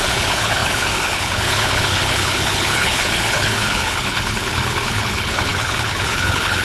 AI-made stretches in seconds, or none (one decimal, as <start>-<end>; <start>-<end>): 0.0-6.6